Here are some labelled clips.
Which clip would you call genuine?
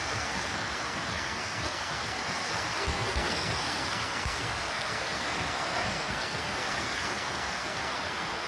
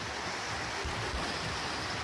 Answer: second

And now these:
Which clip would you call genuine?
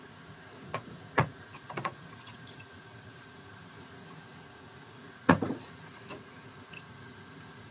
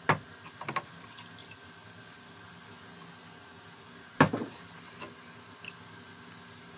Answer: second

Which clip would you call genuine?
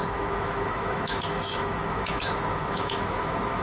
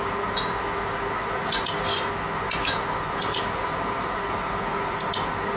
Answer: second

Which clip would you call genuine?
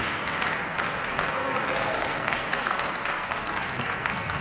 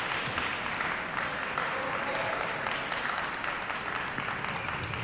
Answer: second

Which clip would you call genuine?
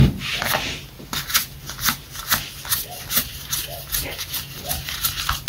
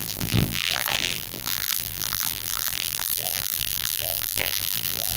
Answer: first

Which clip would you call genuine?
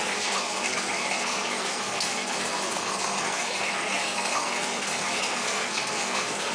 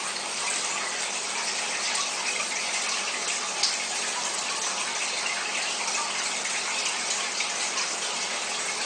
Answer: second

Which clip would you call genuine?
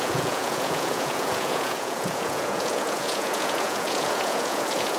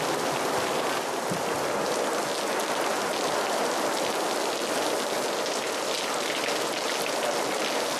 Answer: second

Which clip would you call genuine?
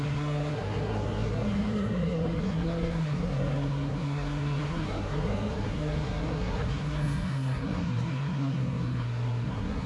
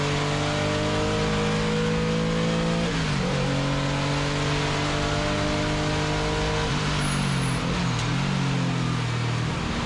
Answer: second